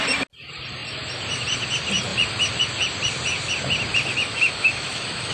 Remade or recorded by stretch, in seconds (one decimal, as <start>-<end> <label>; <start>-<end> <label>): 0.0-4.1 recorded; 4.1-5.3 remade

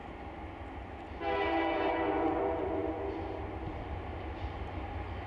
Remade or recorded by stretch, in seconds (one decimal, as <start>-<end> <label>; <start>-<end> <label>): 0.0-5.3 recorded

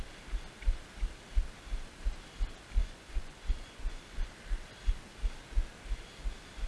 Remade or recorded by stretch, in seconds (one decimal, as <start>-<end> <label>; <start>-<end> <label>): 0.0-2.8 recorded; 2.8-4.3 remade; 4.3-6.7 recorded

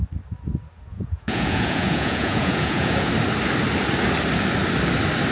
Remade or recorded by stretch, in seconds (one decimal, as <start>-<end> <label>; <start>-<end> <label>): 0.0-0.9 recorded; 0.9-3.1 remade; 3.1-5.3 recorded

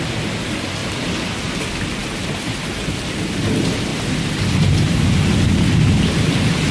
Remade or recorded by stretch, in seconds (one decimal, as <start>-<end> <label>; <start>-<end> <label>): 0.0-6.7 recorded

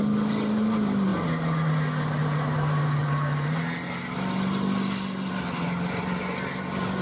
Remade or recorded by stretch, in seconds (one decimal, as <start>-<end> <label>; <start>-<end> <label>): 0.0-7.0 recorded

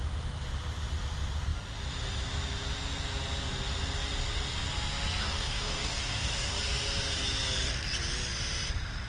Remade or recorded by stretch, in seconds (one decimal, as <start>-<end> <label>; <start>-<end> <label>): 0.0-5.2 recorded; 5.2-6.6 remade; 6.6-9.1 recorded